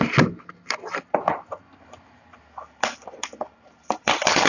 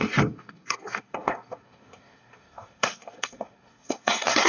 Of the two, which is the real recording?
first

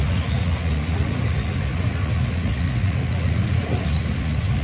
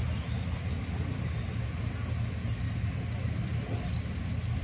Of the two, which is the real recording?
second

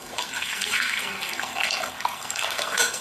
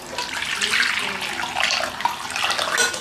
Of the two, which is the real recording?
second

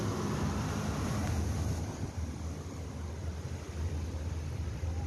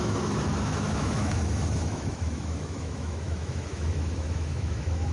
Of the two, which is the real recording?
first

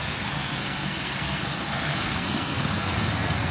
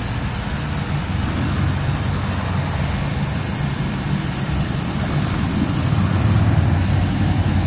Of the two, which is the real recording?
second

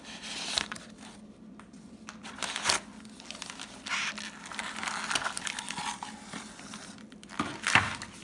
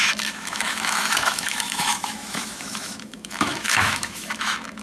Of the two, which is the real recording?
first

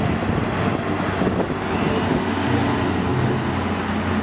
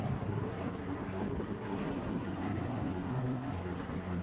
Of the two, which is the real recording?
first